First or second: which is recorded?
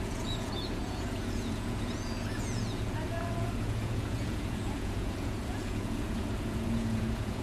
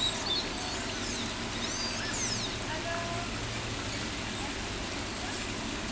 second